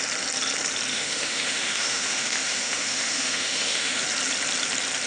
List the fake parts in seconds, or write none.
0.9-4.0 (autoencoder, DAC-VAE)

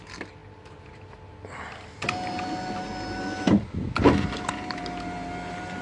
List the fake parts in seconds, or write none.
none